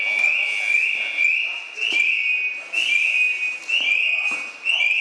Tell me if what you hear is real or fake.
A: real